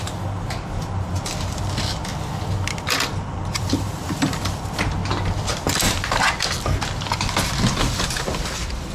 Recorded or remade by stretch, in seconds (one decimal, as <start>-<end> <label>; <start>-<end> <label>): 0.0-2.1 remade; 2.1-2.8 recorded; 2.8-5.0 remade; 5.0-7.7 recorded; 7.7-8.9 remade